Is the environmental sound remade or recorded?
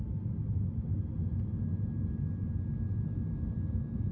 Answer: recorded